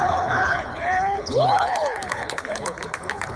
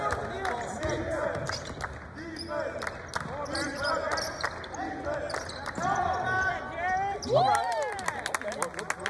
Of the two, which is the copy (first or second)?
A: first